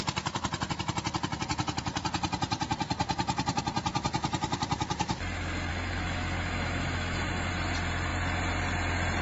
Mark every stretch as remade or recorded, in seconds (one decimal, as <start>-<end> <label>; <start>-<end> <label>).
0.0-5.7 recorded; 5.7-7.5 remade; 7.5-9.2 recorded